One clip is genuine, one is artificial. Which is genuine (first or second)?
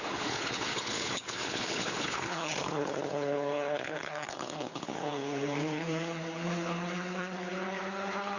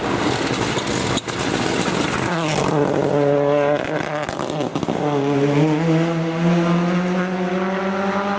second